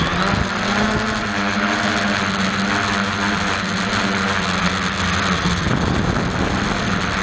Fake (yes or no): no